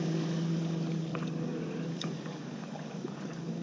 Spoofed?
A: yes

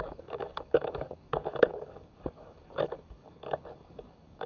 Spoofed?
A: yes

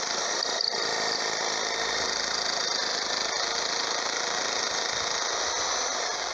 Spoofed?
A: no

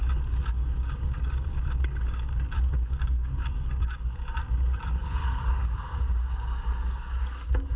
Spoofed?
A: yes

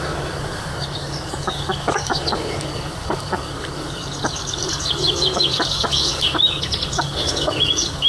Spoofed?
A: yes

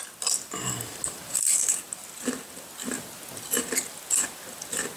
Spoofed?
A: no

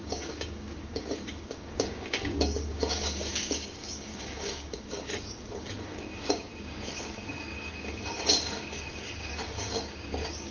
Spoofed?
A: yes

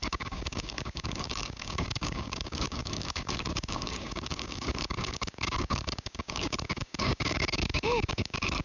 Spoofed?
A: yes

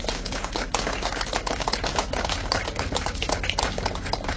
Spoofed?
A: yes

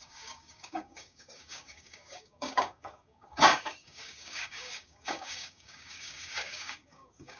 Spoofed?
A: yes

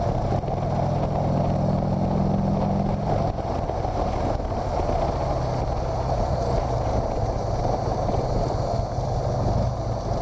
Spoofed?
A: no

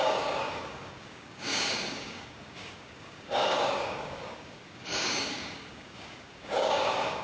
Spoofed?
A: yes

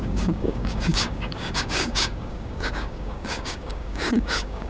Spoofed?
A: yes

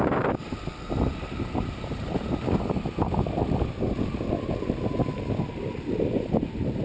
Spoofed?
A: no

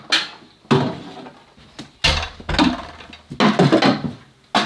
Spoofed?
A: no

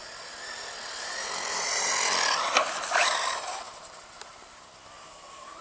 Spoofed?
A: no